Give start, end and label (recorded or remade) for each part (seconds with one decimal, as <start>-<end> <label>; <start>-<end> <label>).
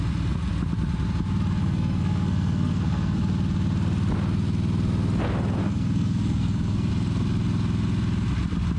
0.0-1.6 recorded; 1.6-3.2 remade; 3.2-5.6 recorded; 5.6-6.9 remade; 6.9-8.8 recorded